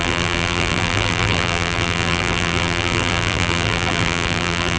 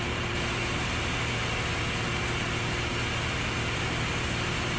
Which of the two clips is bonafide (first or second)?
second